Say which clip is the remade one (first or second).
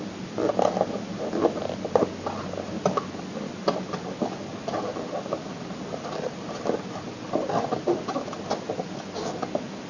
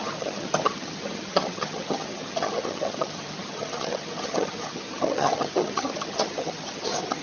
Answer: second